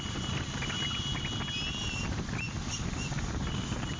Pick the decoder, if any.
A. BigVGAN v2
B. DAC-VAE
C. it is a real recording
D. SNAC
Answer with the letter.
C